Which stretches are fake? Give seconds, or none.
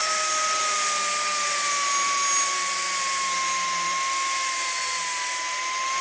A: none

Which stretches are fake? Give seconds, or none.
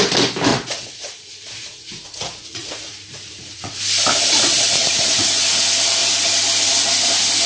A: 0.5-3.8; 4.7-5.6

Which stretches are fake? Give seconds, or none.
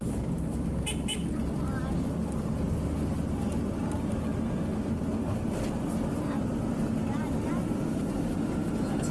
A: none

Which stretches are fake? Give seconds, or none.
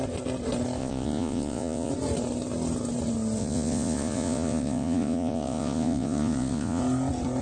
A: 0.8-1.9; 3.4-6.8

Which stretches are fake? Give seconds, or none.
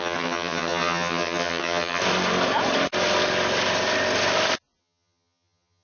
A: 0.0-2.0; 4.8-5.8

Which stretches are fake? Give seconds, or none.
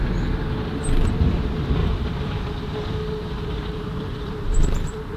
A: 1.8-5.2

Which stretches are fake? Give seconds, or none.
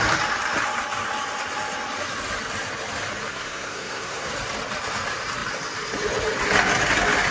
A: 3.3-4.3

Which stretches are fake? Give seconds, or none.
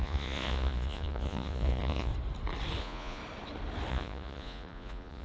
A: 0.0-2.1; 2.8-3.2; 3.9-5.2